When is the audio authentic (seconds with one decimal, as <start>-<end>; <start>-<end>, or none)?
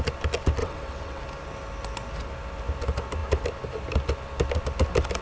0.0-0.6; 1.2-5.2